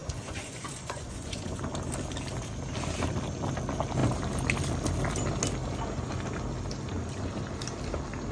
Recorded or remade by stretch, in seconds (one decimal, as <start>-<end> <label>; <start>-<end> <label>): 0.0-1.6 remade; 1.6-8.3 recorded